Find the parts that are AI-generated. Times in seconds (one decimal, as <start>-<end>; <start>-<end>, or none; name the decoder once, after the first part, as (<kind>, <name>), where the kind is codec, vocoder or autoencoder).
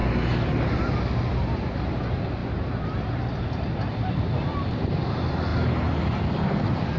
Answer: none